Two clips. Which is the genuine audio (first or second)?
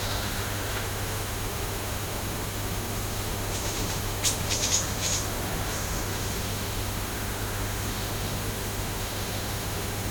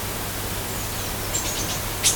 second